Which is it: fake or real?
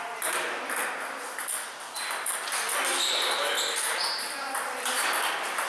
fake